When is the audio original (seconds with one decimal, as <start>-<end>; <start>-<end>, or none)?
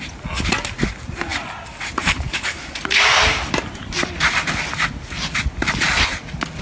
0.0-1.3; 4.3-6.6